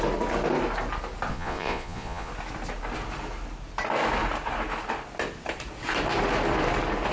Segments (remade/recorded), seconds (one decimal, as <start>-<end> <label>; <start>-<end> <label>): 0.0-1.3 recorded; 1.3-2.3 remade; 2.3-7.1 recorded